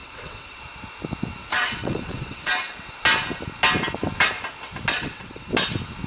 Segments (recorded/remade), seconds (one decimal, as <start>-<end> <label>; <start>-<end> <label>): 0.0-0.6 remade; 0.6-1.4 recorded; 1.4-2.5 remade; 2.5-4.9 recorded; 4.9-5.5 remade; 5.5-6.1 recorded